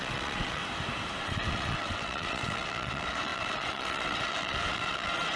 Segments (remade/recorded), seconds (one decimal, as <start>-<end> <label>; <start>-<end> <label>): 0.0-0.6 remade; 0.6-1.2 recorded; 1.2-5.4 remade